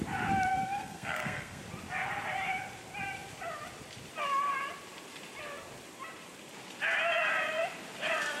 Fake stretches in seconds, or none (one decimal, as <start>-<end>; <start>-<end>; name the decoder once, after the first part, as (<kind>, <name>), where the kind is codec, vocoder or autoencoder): 0.5-1.6 (codec, SNAC)